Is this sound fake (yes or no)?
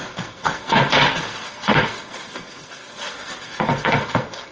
yes